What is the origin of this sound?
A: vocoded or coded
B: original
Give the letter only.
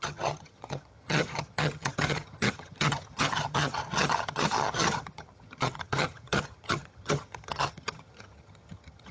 A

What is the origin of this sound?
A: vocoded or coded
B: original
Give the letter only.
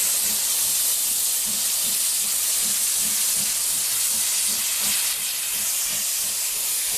B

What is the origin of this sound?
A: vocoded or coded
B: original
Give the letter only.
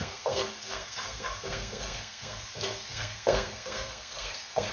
A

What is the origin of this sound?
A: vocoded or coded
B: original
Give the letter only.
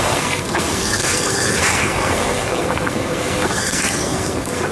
A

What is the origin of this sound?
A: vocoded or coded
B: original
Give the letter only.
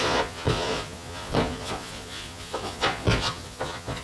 A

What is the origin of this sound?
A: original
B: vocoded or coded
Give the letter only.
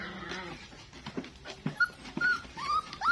A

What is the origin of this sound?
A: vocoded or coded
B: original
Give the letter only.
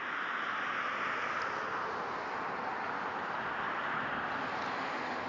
B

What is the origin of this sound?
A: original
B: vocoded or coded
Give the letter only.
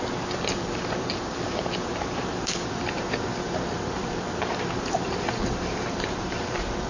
B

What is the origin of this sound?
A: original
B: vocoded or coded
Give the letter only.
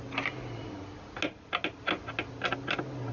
A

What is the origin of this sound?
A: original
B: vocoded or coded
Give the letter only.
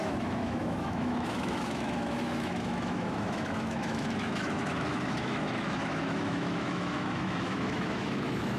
B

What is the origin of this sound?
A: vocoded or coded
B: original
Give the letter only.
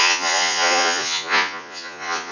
A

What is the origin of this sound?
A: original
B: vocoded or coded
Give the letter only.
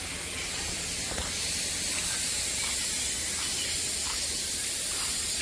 A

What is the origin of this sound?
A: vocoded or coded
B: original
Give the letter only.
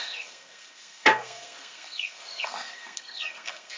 A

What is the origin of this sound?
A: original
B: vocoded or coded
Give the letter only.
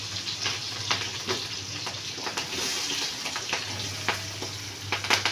A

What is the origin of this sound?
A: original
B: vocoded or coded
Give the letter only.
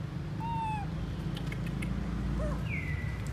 A